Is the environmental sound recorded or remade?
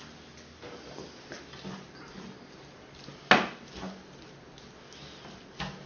recorded